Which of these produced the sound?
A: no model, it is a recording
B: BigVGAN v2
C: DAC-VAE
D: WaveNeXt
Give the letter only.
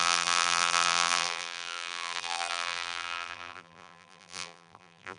B